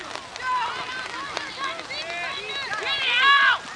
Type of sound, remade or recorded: recorded